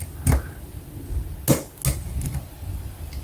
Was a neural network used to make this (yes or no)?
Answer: no